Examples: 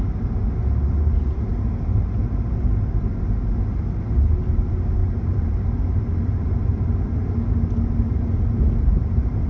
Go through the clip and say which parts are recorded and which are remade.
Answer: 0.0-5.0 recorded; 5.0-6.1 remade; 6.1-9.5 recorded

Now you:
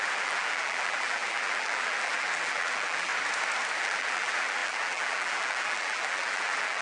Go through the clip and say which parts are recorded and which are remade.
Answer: 0.0-3.1 remade; 3.1-3.8 recorded; 3.8-6.8 remade

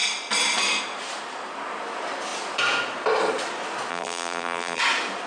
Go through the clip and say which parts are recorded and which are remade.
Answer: 0.0-3.9 recorded; 3.9-4.8 remade; 4.8-5.3 recorded

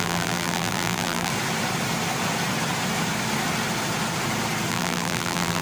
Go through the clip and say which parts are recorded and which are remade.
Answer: 0.0-1.3 remade; 1.3-4.7 recorded; 4.7-5.6 remade

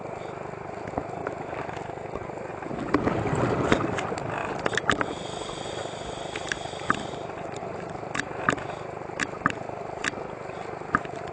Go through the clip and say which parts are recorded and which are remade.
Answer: 0.0-1.2 remade; 1.2-1.8 recorded; 1.8-2.5 remade; 2.5-3.1 recorded; 3.1-11.3 remade

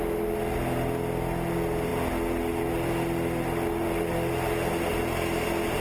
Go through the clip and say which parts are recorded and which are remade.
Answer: 0.0-5.8 recorded